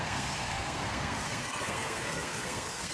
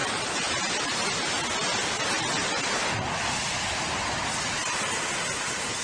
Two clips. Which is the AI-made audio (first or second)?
first